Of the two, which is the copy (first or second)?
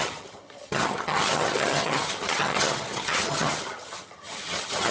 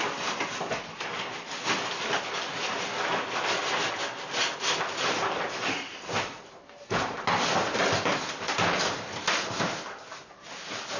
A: first